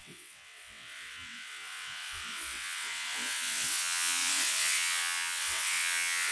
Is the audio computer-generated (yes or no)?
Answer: yes